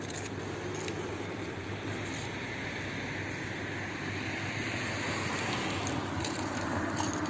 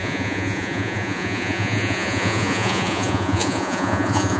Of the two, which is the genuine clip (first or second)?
first